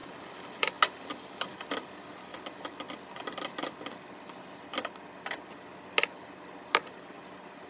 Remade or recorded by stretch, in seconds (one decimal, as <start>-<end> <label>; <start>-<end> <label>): 0.0-0.7 remade; 0.7-7.7 recorded